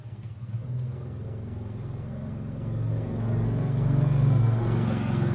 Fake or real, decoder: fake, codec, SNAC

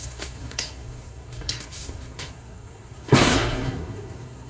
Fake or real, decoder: fake, codec, SNAC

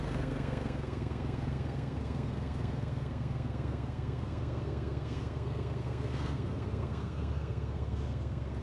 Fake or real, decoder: fake, codec, SNAC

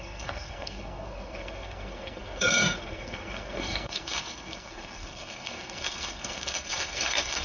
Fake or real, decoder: fake, codec, SNAC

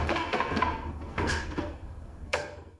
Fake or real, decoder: fake, codec, SNAC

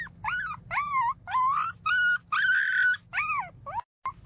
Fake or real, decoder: real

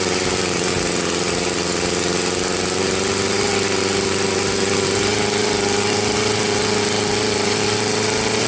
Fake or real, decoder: real